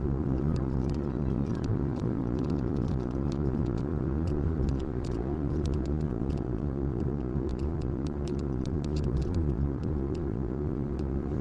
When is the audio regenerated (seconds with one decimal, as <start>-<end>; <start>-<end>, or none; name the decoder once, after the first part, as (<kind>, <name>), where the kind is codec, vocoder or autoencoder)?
0.0-11.4 (vocoder, Vocos)